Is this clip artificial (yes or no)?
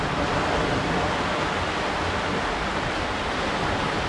no